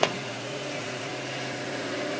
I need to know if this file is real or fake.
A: fake